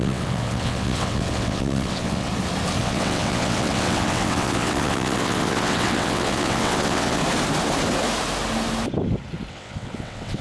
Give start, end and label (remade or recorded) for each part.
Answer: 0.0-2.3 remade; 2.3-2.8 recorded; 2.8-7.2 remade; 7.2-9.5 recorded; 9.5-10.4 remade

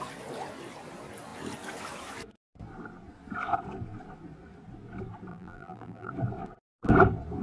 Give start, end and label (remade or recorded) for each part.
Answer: 0.0-5.3 recorded; 5.3-6.1 remade; 6.1-7.4 recorded

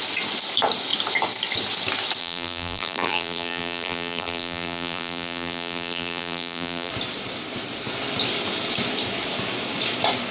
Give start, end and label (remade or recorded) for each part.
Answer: 0.0-2.2 recorded; 2.2-6.9 remade; 6.9-10.3 recorded

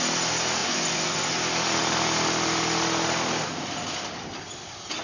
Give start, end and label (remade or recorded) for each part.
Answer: 0.0-0.6 recorded; 0.6-1.3 remade; 1.3-5.0 recorded

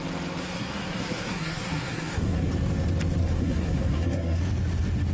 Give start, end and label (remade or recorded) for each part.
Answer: 0.0-0.4 recorded; 0.4-2.5 remade; 2.5-3.2 recorded; 3.2-4.4 remade; 4.4-5.1 recorded

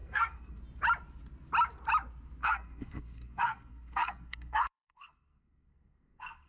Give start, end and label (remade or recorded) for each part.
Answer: 0.0-0.6 remade; 0.6-2.4 recorded; 2.4-6.5 remade

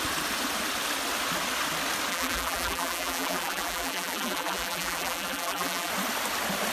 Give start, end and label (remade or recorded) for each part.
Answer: 0.0-2.1 recorded; 2.1-5.9 remade; 5.9-6.7 recorded

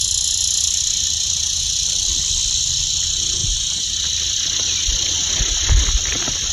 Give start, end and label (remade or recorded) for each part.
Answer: 0.0-6.5 recorded